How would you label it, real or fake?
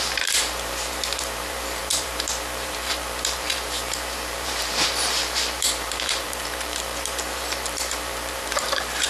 fake